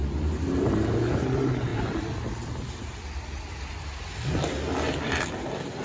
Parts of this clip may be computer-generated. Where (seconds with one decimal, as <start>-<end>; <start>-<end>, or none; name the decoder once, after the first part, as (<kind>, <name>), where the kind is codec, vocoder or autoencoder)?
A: none